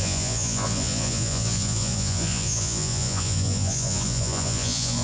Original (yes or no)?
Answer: no